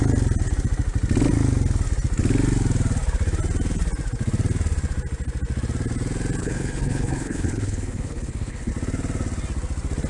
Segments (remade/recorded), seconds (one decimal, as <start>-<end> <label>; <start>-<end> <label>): 0.0-6.4 recorded; 6.4-8.7 remade; 8.7-10.1 recorded